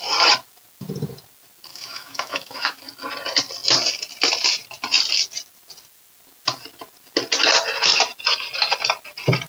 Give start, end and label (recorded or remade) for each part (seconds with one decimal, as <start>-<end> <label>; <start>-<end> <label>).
0.0-1.7 recorded; 1.7-2.8 remade; 2.8-9.5 recorded